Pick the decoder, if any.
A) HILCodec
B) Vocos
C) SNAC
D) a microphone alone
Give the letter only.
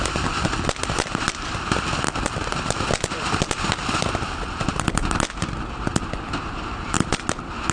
D